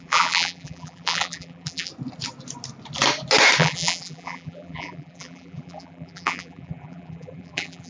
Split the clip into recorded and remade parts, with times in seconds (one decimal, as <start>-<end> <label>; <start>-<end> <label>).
0.0-1.9 remade; 1.9-3.6 recorded; 3.6-7.9 remade